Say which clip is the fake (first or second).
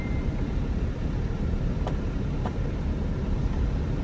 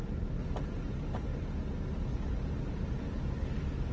first